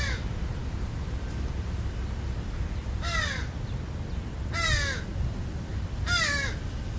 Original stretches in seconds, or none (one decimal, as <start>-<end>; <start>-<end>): 0.0-7.0